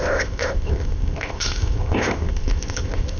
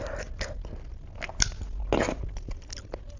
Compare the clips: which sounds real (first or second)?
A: second